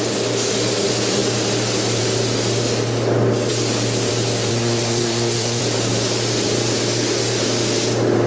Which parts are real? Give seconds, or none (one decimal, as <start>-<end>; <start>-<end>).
0.0-4.5; 5.6-8.3